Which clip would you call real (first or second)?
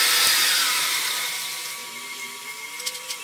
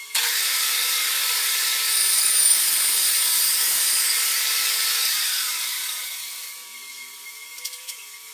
first